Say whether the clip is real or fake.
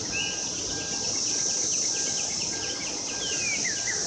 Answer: real